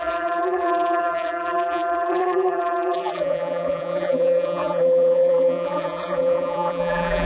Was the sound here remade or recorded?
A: remade